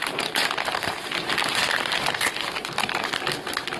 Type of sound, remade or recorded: recorded